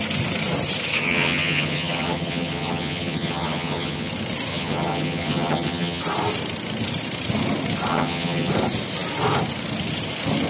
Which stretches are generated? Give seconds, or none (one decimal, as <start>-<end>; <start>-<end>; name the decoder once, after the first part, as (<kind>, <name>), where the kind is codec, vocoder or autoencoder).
1.0-4.1 (vocoder, HiFi-GAN); 4.5-6.0; 7.9-8.5